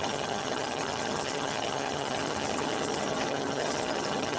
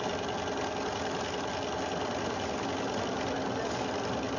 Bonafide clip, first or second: second